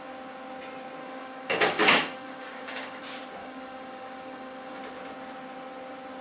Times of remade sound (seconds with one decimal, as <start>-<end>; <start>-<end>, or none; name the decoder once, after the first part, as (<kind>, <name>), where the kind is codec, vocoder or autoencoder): 1.0-3.0 (codec, DAC); 3.4-4.8